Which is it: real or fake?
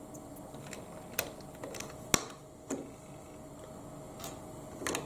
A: real